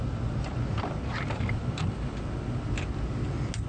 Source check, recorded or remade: recorded